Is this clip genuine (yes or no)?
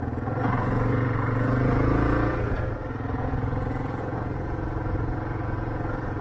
no